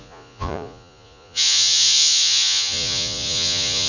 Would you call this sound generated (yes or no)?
yes